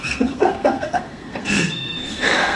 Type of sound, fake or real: fake